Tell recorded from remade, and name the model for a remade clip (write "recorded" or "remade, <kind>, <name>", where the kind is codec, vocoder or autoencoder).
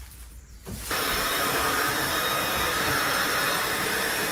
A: remade, vocoder, BigVGAN v2